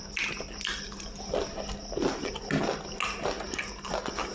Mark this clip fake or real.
real